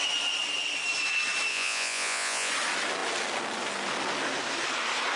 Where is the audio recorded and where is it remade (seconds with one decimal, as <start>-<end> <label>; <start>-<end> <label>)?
0.0-1.5 recorded; 1.5-2.5 remade; 2.5-5.2 recorded